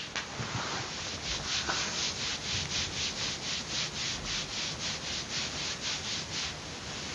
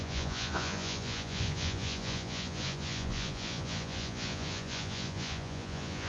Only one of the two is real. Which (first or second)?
first